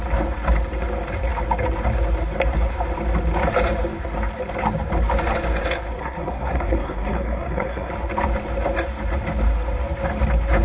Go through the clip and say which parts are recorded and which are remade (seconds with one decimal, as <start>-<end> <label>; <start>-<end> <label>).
0.0-6.0 recorded; 6.0-7.9 remade; 7.9-10.6 recorded